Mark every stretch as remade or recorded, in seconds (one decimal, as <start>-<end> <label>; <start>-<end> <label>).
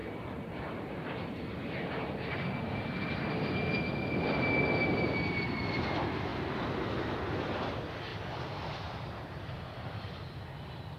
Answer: 0.0-2.3 remade; 2.3-8.1 recorded; 8.1-9.9 remade; 9.9-11.0 recorded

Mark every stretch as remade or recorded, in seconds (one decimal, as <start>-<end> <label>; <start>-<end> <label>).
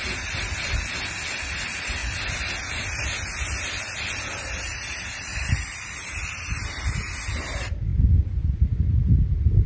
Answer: 0.0-7.9 remade; 7.9-8.6 recorded; 8.6-9.7 remade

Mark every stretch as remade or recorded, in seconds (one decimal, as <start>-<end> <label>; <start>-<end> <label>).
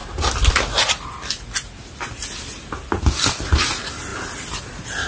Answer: 0.0-5.1 recorded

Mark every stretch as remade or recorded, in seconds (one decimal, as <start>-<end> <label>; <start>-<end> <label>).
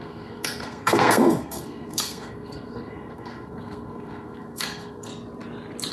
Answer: 0.0-5.1 remade; 5.1-5.9 recorded